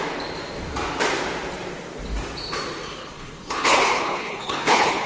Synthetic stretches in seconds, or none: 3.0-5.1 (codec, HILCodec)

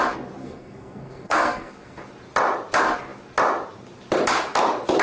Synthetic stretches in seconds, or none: 0.4-2.0 (codec, SNAC)

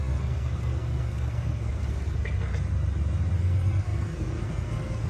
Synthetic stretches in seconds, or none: 0.0-2.5 (codec, SNAC); 3.4-5.1

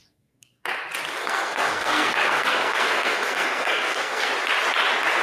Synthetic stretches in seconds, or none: 0.0-0.7 (codec, SNAC); 1.2-4.3